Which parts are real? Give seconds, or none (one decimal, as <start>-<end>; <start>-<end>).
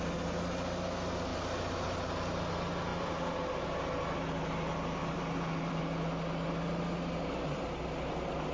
0.0-2.9; 3.5-5.0; 5.8-8.5